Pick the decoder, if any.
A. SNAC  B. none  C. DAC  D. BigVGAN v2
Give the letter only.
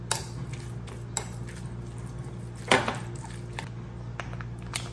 B